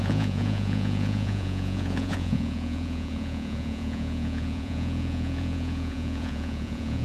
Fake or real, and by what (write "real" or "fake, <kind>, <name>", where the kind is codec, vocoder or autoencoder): fake, vocoder, Vocos